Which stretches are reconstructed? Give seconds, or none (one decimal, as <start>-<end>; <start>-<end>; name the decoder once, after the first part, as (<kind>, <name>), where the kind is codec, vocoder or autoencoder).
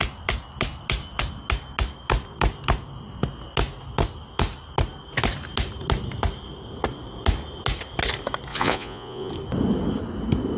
8.5-9.3 (vocoder, Vocos)